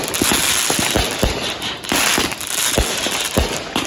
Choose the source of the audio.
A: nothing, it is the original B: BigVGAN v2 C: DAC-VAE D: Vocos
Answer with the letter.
A